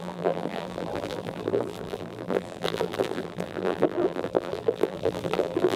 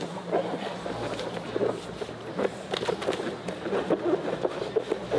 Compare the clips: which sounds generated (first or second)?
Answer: first